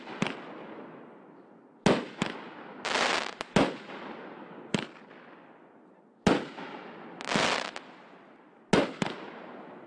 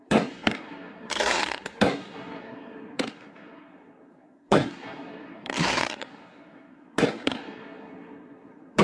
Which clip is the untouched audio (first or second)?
first